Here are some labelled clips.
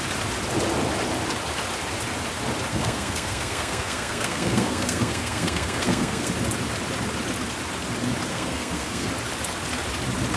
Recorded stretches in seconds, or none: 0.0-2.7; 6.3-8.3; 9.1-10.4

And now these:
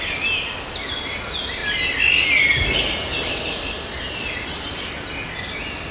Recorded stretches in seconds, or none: 0.0-5.9

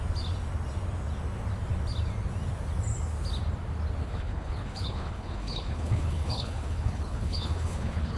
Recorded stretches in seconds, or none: 0.0-4.0